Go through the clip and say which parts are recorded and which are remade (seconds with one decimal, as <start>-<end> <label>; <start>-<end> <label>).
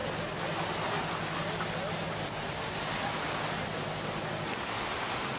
0.0-5.4 recorded